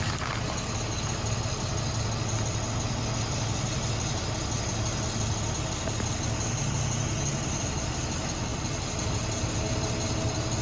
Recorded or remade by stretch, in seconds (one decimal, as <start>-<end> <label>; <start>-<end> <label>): 0.0-8.5 recorded; 8.5-9.0 remade; 9.0-10.6 recorded